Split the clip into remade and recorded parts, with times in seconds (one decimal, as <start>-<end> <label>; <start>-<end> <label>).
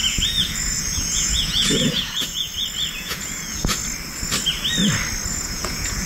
0.0-2.5 remade; 2.5-3.0 recorded; 3.0-3.8 remade; 3.8-5.3 recorded; 5.3-6.1 remade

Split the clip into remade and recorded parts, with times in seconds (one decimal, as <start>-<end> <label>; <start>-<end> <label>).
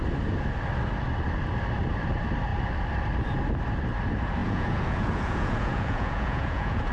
0.0-4.4 recorded; 4.4-6.9 remade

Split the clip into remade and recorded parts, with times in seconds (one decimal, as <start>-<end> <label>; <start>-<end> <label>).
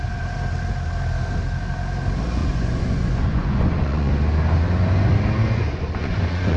0.0-2.4 recorded; 2.4-4.1 remade; 4.1-5.4 recorded; 5.4-6.6 remade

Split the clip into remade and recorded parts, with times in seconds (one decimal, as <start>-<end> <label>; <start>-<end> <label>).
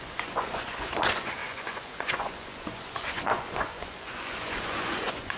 0.0-5.4 remade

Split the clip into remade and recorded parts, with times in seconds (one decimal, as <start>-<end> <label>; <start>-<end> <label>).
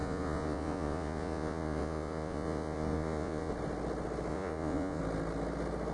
0.0-3.5 remade; 3.5-4.3 recorded; 4.3-5.0 remade; 5.0-5.9 recorded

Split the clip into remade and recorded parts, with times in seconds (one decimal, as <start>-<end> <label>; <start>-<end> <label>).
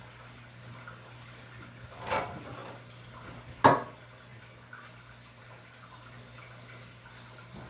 0.0-7.7 recorded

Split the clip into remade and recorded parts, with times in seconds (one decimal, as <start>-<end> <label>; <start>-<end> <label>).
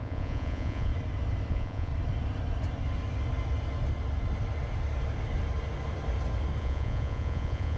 0.0-0.9 remade; 0.9-1.5 recorded; 1.5-1.9 remade; 1.9-6.6 recorded; 6.6-7.8 remade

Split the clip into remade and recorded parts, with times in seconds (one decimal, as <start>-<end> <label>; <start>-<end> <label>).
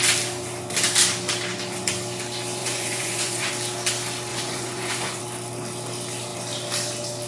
0.0-2.6 recorded; 2.6-3.5 remade; 3.5-4.3 recorded; 4.3-5.2 remade; 5.2-7.3 recorded